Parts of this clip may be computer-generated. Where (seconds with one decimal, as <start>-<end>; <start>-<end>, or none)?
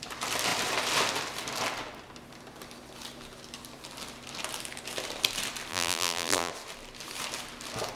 5.7-6.5